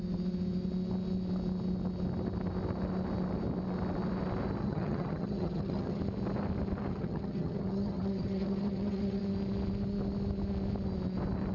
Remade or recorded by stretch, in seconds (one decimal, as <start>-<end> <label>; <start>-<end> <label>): 0.0-4.6 recorded; 4.6-6.0 remade; 6.0-6.9 recorded; 6.9-9.2 remade; 9.2-11.5 recorded